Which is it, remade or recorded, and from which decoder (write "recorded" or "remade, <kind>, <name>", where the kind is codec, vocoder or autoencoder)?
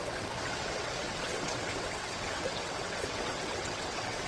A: remade, vocoder, WaveNeXt